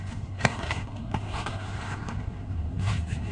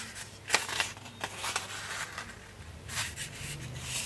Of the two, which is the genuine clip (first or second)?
second